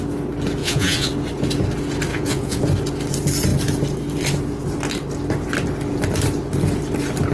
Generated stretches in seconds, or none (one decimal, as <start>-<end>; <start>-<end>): 0.6-1.1; 2.1-2.6